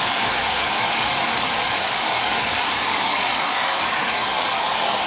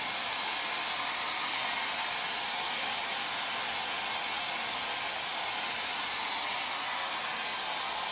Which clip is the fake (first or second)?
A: first